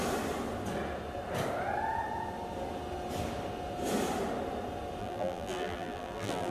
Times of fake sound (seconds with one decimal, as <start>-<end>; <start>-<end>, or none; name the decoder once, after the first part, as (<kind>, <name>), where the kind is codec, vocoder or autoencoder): 5.0-6.5 (vocoder, BigVGAN v2)